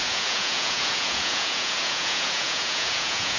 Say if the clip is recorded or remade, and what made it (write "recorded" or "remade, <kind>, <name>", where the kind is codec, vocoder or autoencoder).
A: remade, vocoder, Vocos